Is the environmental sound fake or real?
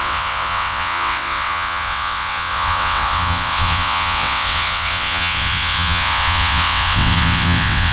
fake